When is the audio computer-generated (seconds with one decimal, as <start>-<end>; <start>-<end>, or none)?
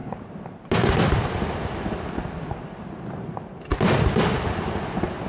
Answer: none